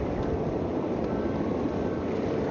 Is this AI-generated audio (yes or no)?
no